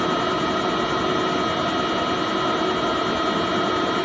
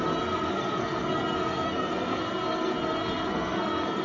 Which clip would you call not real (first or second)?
second